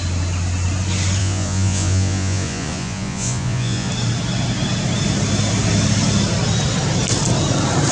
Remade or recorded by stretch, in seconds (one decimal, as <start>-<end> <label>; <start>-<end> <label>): 0.0-1.2 recorded; 1.2-3.9 remade; 3.9-7.9 recorded